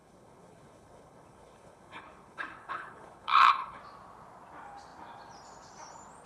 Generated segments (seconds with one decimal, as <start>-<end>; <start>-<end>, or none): 0.0-3.8